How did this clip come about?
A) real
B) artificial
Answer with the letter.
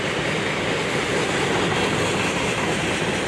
A